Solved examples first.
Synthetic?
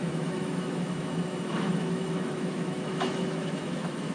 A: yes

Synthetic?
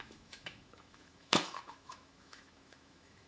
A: yes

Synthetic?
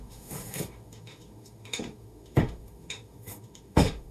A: yes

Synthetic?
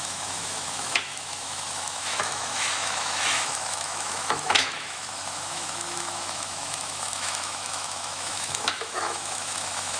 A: yes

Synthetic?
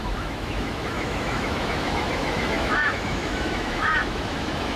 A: yes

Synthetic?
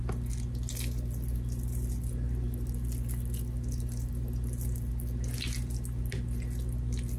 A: no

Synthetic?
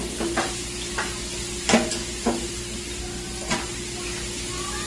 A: no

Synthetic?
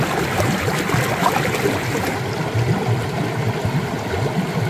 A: no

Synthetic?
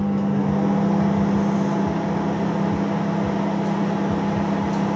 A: no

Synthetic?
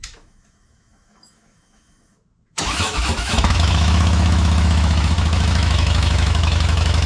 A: yes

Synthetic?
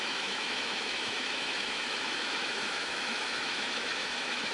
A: yes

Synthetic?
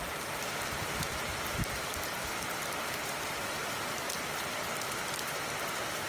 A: no